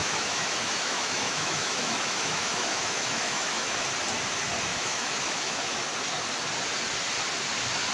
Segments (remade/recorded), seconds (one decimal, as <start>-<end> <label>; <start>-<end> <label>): 0.0-3.8 remade; 3.8-4.7 recorded; 4.7-5.8 remade; 5.8-7.9 recorded